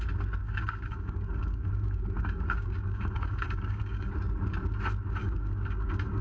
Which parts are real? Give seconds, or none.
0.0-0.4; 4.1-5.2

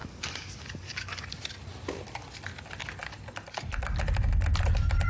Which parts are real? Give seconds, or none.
1.2-5.1

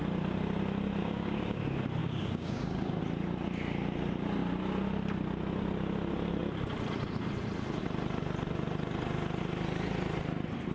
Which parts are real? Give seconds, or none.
0.0-1.0; 1.6-2.0; 3.0-10.7

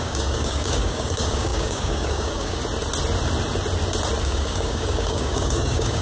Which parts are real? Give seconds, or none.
2.6-4.2